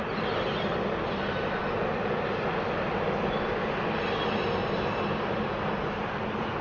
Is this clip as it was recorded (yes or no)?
yes